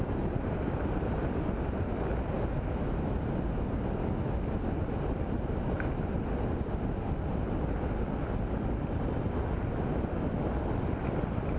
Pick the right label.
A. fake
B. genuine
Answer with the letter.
B